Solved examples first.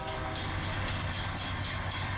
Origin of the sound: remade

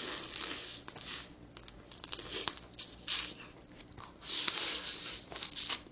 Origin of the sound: recorded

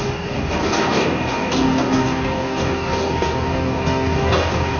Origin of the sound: remade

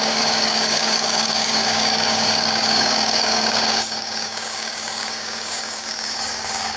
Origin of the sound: remade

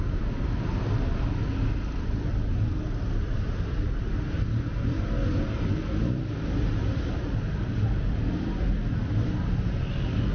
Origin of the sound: recorded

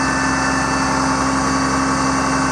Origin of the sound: recorded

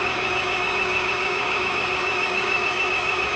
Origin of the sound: remade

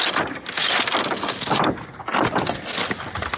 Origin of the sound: recorded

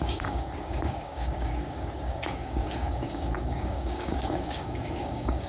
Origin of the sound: remade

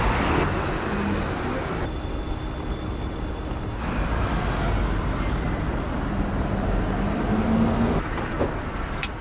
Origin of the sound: recorded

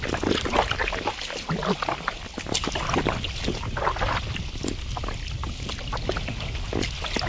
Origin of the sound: recorded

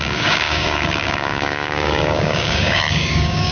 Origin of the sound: remade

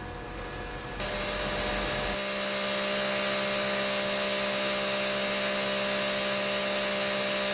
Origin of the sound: recorded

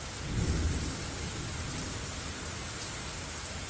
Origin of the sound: recorded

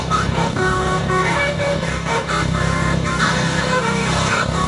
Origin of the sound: remade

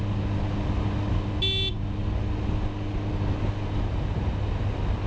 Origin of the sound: recorded